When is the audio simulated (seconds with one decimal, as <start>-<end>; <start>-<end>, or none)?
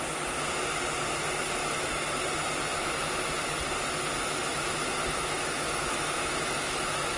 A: 1.6-2.2; 4.5-7.2